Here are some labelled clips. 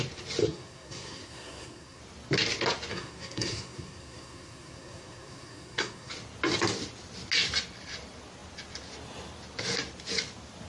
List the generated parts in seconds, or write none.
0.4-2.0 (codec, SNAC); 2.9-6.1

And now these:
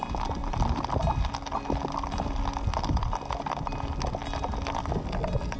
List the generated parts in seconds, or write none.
none

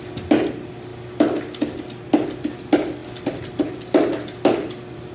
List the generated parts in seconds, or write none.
none

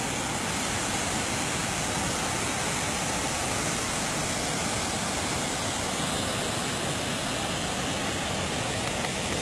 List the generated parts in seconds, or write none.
none